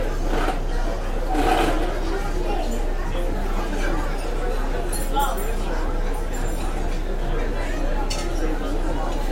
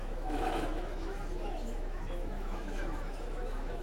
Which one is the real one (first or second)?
first